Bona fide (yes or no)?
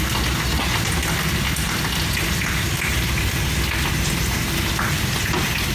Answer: yes